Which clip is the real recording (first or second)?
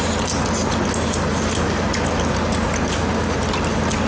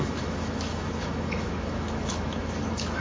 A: first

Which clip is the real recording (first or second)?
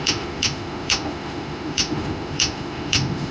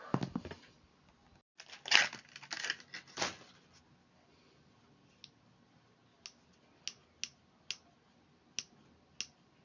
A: second